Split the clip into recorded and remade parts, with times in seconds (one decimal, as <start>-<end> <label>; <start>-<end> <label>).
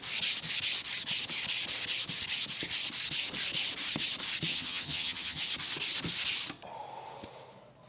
0.0-4.5 recorded; 4.5-5.4 remade; 5.4-7.9 recorded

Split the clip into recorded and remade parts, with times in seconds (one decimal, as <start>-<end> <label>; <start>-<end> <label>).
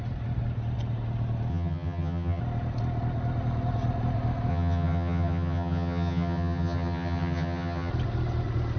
0.0-1.5 recorded; 1.5-2.4 remade; 2.4-4.5 recorded; 4.5-7.9 remade; 7.9-8.8 recorded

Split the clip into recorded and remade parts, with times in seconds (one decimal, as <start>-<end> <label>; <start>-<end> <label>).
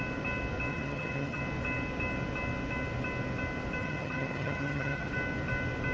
0.0-0.7 recorded; 0.7-1.4 remade; 1.4-3.8 recorded; 3.8-5.1 remade; 5.1-5.9 recorded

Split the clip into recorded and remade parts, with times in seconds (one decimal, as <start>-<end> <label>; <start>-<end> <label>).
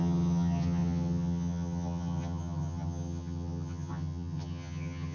0.0-5.1 remade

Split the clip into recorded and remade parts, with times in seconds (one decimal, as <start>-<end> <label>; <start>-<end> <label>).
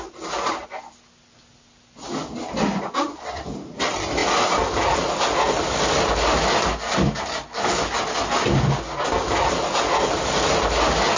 0.0-11.2 recorded